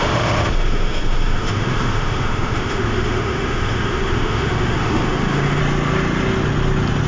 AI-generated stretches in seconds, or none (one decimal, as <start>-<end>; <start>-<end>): 0.0-5.6